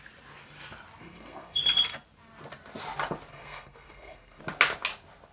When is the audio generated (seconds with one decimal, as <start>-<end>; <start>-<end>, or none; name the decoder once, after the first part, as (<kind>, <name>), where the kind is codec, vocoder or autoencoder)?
1.0-1.6 (codec, SNAC); 3.3-4.4